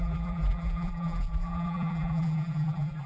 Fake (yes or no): yes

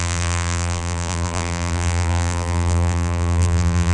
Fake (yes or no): yes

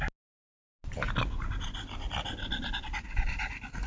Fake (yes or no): no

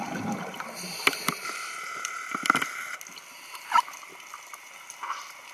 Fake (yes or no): no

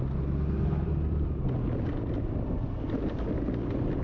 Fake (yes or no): no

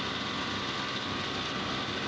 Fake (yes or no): no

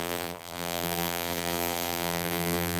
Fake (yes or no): yes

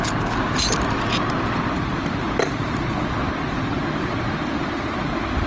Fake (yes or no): no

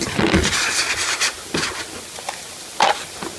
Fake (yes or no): no